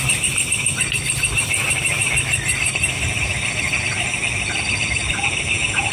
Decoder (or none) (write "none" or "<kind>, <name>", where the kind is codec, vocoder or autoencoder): vocoder, BigVGAN v2